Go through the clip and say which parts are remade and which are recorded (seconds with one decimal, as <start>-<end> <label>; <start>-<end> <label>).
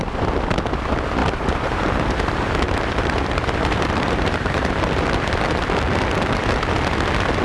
0.0-1.2 recorded; 1.2-4.7 remade; 4.7-7.4 recorded